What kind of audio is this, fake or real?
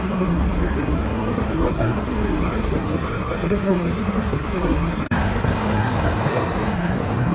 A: fake